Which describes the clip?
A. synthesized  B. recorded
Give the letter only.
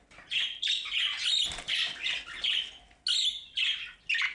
B